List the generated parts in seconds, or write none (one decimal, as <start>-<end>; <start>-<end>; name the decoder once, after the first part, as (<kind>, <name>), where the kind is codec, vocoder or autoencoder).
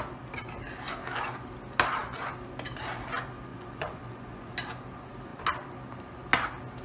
3.5-4.5 (vocoder, Vocos)